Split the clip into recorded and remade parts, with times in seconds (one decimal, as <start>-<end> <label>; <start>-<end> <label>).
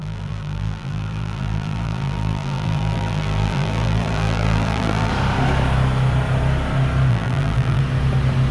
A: 0.0-5.1 remade; 5.1-7.1 recorded; 7.1-7.8 remade; 7.8-8.5 recorded